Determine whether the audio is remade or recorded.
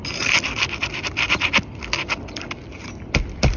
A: recorded